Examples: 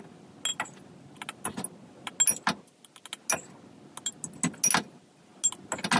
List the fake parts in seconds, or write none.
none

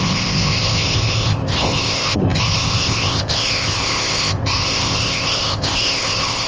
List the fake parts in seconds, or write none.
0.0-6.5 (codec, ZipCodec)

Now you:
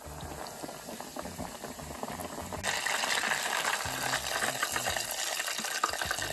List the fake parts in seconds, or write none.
none

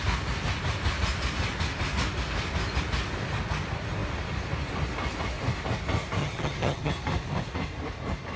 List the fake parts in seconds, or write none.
6.2-6.9 (vocoder, HiFi-GAN)

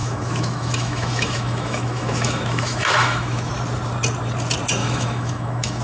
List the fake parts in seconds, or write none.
0.0-3.5 (autoencoder, DAC-VAE); 4.8-5.8

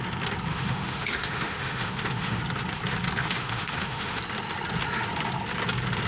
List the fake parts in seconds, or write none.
0.5-2.4 (autoencoder, DAC-VAE); 3.2-4.2

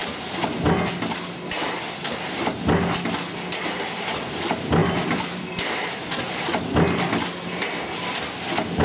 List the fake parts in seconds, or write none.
4.8-5.5 (vocoder, BigVGAN v2)